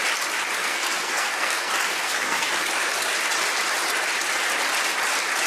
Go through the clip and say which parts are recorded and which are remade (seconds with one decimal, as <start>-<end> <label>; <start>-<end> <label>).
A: 0.0-0.6 recorded; 0.6-2.5 remade; 2.5-5.5 recorded